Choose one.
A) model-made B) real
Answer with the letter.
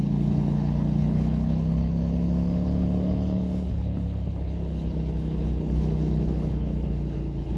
A